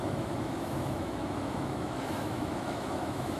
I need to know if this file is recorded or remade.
remade